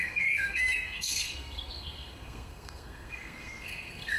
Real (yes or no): no